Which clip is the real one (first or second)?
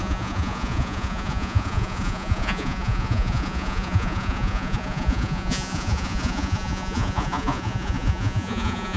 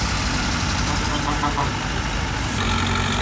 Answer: second